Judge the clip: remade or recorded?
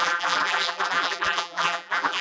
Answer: remade